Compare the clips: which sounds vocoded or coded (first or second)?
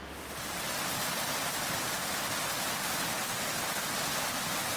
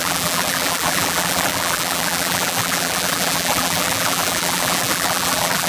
second